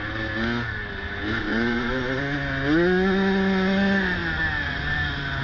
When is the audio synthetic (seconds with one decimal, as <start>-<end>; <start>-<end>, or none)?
1.5-2.2